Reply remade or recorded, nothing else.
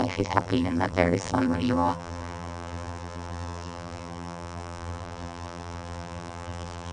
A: remade